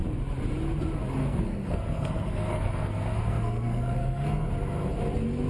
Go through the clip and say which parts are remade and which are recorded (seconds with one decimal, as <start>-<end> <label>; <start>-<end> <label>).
0.0-1.2 recorded; 1.2-4.5 remade; 4.5-5.5 recorded